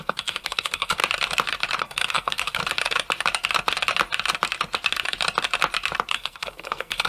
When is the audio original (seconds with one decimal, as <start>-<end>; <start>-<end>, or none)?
1.0-1.8; 2.6-6.1